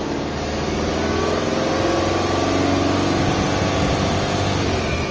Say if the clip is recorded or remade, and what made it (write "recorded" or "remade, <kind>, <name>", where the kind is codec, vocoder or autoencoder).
recorded